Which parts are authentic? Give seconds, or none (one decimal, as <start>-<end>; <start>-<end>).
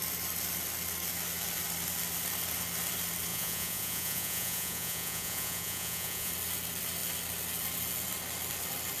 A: 0.0-3.3; 6.3-9.0